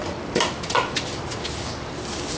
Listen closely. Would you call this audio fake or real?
real